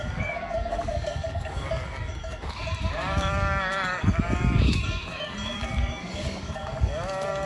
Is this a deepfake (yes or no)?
yes